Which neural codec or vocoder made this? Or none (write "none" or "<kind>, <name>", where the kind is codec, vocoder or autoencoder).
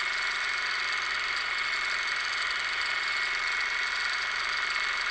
none